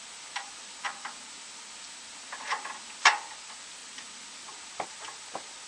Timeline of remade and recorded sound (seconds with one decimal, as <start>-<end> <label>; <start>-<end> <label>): 0.0-5.7 recorded